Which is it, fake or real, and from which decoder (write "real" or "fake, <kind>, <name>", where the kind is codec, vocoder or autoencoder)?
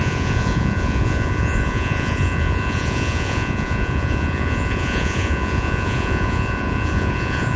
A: fake, vocoder, Vocos